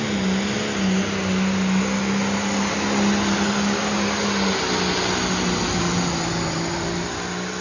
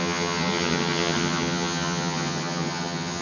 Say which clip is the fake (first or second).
second